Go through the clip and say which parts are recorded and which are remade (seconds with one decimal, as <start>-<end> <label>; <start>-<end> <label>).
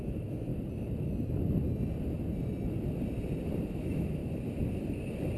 0.0-0.5 remade; 0.5-3.7 recorded; 3.7-4.2 remade; 4.2-5.4 recorded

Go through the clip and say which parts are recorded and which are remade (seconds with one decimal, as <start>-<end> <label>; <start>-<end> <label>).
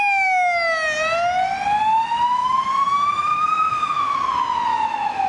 0.0-2.4 recorded; 2.4-4.3 remade; 4.3-4.7 recorded; 4.7-5.3 remade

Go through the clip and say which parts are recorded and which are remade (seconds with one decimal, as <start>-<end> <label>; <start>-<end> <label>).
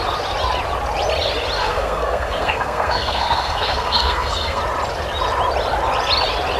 0.0-1.6 recorded; 1.6-4.6 remade; 4.6-6.6 recorded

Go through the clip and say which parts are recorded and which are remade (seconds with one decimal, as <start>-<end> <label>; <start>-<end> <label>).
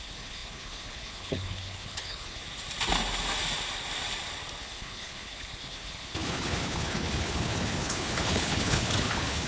0.0-2.4 remade; 2.4-4.6 recorded; 4.6-9.5 remade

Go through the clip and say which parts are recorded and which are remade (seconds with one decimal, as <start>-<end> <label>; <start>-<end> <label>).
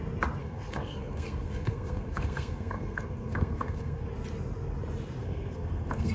0.0-0.4 recorded; 0.4-4.1 remade; 4.1-5.2 recorded; 5.2-6.1 remade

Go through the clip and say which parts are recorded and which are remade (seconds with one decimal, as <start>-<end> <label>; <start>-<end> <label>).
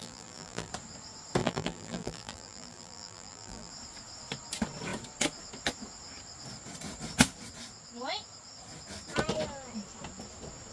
0.0-0.7 remade; 0.7-1.4 recorded; 1.4-3.7 remade; 3.7-10.7 recorded